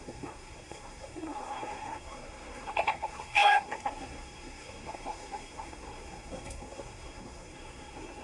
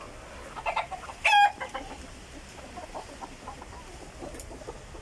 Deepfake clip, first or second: first